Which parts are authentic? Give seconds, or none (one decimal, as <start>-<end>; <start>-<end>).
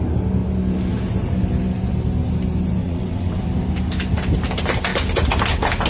0.0-2.8; 3.4-5.9